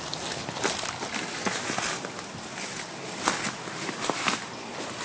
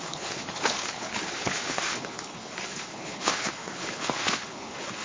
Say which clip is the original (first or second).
first